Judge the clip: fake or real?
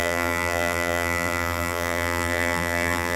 fake